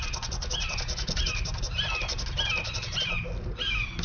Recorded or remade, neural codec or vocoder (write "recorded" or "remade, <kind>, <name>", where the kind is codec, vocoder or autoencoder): recorded